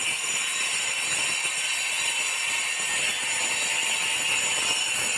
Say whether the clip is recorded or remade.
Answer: recorded